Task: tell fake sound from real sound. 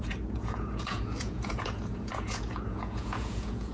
fake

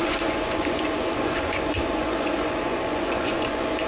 fake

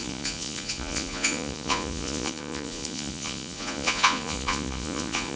fake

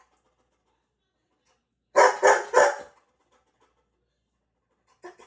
real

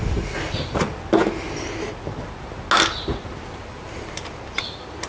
real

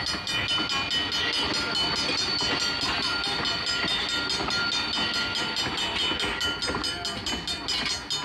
real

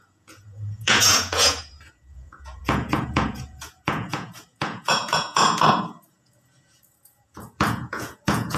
fake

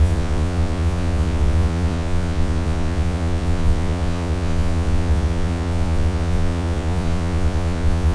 fake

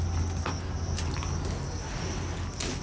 real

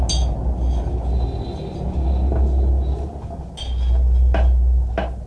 real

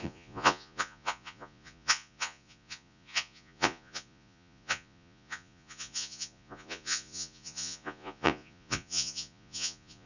fake